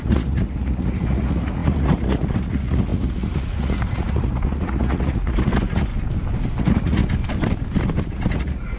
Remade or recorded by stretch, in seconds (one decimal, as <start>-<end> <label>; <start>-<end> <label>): 0.0-5.9 remade; 5.9-6.6 recorded; 6.6-7.0 remade; 7.0-8.0 recorded; 8.0-8.8 remade